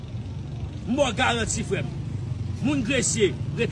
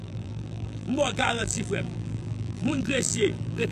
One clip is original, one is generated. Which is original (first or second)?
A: first